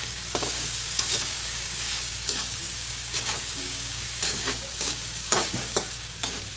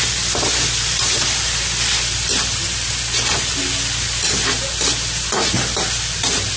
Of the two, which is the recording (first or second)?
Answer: second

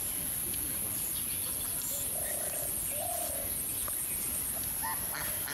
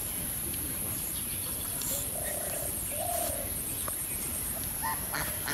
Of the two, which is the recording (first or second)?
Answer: first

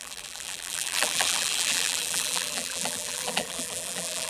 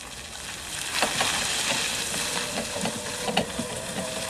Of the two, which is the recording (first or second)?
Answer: second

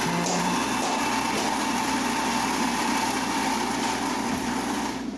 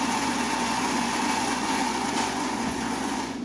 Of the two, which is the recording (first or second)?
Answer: first